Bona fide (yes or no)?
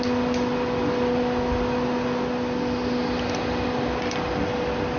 yes